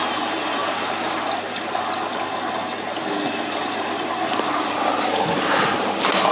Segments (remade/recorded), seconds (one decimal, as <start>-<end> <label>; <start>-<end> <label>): 0.0-6.3 recorded